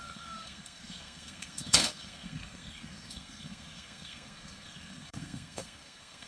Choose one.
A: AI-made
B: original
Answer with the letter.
A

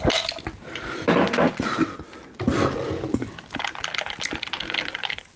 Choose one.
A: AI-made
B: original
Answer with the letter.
B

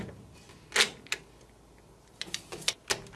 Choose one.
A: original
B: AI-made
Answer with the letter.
A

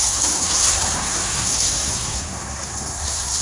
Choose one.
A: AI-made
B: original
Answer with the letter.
A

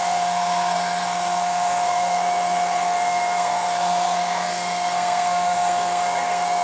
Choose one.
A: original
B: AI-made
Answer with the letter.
B